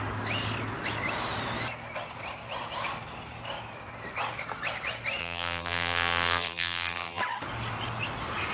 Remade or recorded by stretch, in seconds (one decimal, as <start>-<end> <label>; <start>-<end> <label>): 0.0-5.2 recorded; 5.2-7.2 remade; 7.2-8.5 recorded